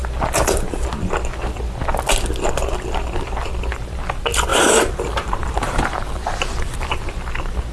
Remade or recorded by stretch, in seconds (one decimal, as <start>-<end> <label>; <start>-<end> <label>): 0.0-4.5 recorded; 4.5-7.0 remade; 7.0-7.7 recorded